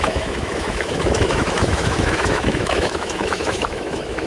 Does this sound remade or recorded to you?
remade